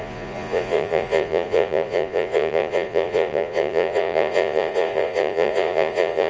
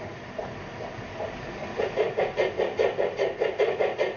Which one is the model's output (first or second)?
first